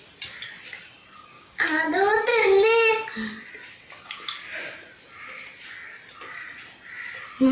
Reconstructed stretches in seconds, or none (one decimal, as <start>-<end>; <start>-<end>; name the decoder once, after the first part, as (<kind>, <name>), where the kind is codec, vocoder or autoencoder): 1.3-1.8 (codec, DAC); 2.3-2.9